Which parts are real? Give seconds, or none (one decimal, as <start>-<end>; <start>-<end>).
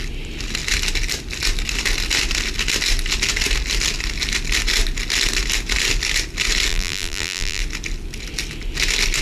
0.0-6.7; 7.6-9.2